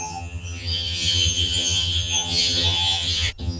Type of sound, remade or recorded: remade